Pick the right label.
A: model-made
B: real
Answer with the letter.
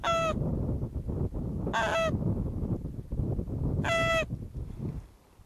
B